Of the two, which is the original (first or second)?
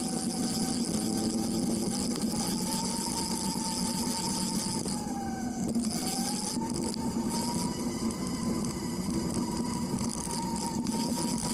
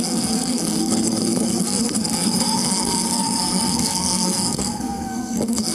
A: first